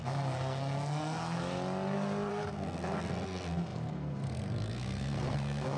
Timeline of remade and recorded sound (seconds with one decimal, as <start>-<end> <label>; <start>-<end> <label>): 0.0-1.4 remade; 1.4-2.3 recorded; 2.3-5.8 remade